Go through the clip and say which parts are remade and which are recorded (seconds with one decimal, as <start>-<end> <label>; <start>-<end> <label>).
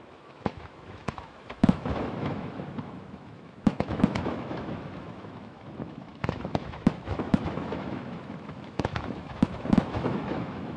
0.0-10.8 remade